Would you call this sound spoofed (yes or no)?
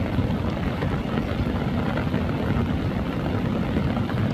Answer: no